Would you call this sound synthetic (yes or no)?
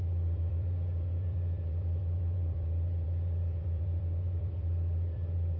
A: yes